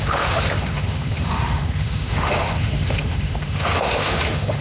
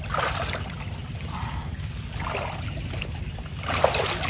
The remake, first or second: first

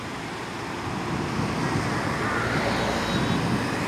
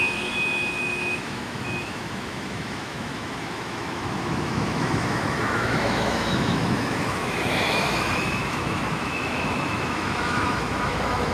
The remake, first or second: second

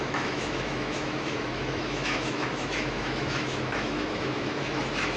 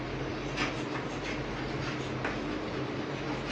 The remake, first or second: first